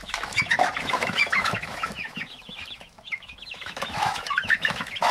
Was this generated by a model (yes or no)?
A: yes